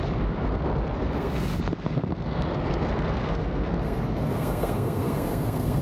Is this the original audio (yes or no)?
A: no